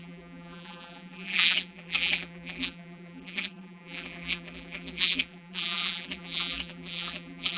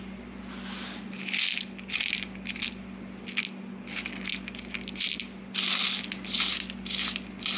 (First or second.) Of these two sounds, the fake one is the first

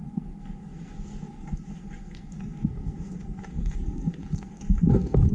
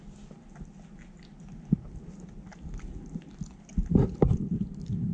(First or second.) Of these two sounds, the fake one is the first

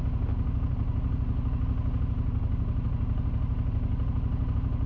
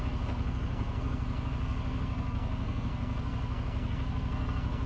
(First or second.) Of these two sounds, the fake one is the second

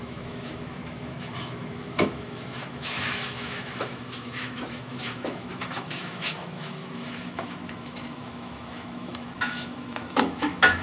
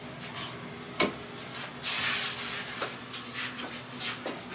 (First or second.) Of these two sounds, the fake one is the first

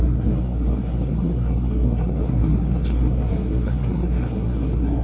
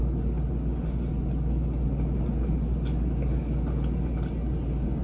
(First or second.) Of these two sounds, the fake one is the first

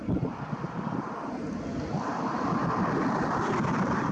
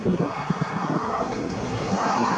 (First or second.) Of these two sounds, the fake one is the second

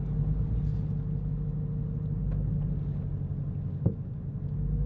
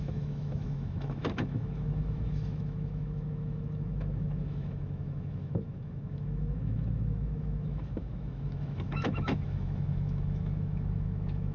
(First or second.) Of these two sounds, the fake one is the second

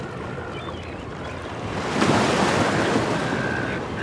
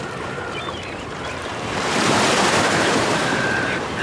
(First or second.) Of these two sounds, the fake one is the second